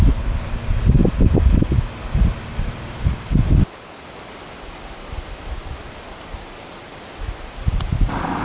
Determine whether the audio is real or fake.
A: real